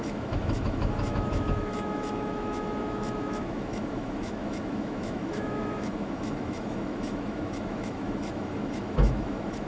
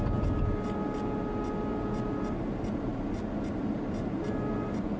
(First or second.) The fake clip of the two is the first